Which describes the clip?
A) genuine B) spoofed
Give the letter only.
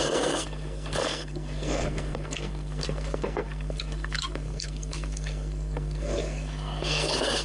B